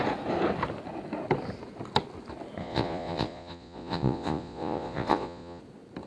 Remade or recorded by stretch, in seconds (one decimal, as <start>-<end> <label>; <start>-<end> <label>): 0.0-2.6 recorded; 2.6-5.6 remade; 5.6-6.1 recorded

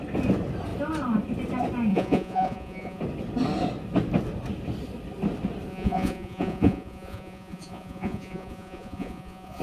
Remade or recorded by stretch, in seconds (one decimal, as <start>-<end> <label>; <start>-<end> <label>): 0.0-1.9 recorded; 1.9-3.0 remade; 3.0-5.7 recorded; 5.7-9.6 remade

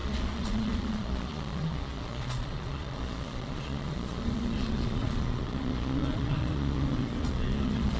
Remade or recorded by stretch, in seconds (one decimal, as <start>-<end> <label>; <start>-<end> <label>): 0.0-8.0 remade

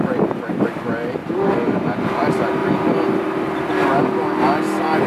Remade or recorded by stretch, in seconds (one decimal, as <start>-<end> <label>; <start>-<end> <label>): 0.0-5.1 recorded

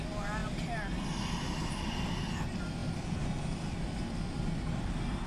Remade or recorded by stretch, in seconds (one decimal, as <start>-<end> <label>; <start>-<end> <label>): 0.0-5.3 recorded

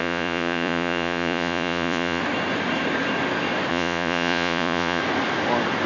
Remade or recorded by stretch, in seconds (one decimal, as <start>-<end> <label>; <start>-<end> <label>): 0.0-2.2 remade; 2.2-3.7 recorded; 3.7-5.0 remade; 5.0-5.9 recorded

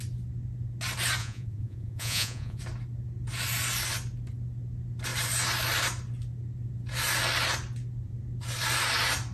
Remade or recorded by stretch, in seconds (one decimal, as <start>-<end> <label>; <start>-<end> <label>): 0.0-1.2 recorded; 1.2-2.6 remade; 2.6-9.3 recorded

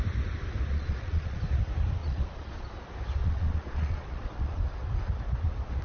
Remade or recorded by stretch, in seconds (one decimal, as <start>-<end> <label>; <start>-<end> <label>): 0.0-0.7 recorded; 0.7-1.4 remade; 1.4-2.0 recorded; 2.0-2.7 remade; 2.7-3.2 recorded; 3.2-4.6 remade; 4.6-5.8 recorded